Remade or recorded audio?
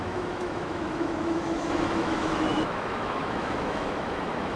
remade